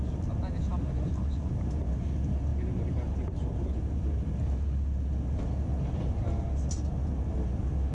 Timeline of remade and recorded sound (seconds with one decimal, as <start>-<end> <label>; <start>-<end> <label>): 0.0-7.9 recorded

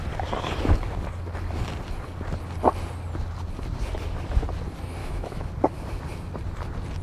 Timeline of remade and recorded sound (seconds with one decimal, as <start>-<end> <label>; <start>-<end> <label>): 0.0-5.0 recorded; 5.0-5.5 remade; 5.5-7.0 recorded

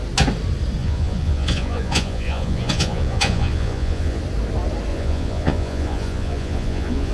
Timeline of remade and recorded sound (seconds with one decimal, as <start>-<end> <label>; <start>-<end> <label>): 0.0-0.8 recorded; 0.8-4.2 remade; 4.2-4.9 recorded; 4.9-7.1 remade